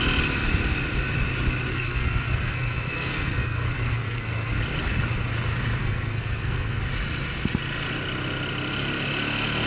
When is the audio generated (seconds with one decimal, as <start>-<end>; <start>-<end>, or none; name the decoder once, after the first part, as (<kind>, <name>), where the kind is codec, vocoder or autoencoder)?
1.7-4.5 (codec, SNAC); 5.8-6.8